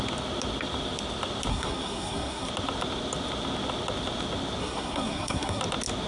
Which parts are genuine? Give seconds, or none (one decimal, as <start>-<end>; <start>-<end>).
0.0-1.5; 2.5-4.6; 5.6-6.1